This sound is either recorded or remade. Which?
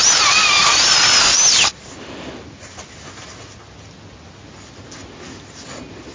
recorded